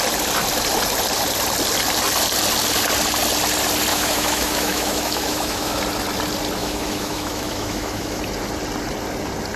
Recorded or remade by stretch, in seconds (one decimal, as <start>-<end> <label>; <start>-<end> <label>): 0.0-3.9 recorded; 3.9-5.8 remade; 5.8-6.6 recorded; 6.6-8.2 remade; 8.2-9.6 recorded